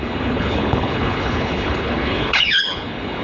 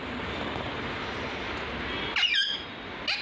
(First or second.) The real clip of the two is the second